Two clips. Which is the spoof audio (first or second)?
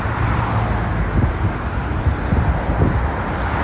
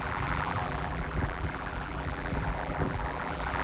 second